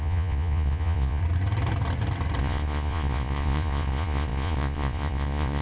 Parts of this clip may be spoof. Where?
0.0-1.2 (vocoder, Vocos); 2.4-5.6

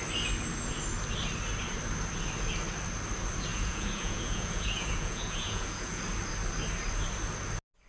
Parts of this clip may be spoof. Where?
3.5-6.0 (vocoder, Vocos)

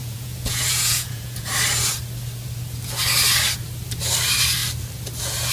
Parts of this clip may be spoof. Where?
0.0-1.5 (vocoder, Vocos)

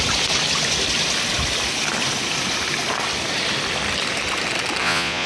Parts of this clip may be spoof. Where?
4.8-5.3 (vocoder, Vocos)

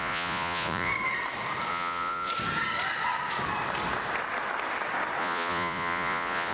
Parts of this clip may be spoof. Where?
0.0-0.9 (vocoder, Vocos); 1.7-2.3; 5.2-6.5

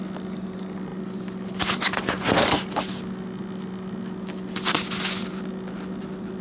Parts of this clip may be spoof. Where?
none

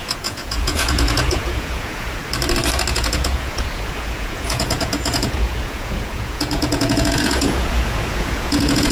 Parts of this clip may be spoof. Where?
0.0-2.2 (vocoder, Vocos); 2.9-8.9